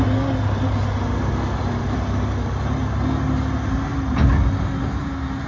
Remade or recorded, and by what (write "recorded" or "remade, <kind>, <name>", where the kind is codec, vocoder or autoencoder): recorded